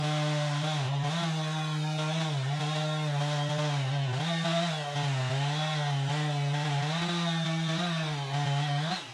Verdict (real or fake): real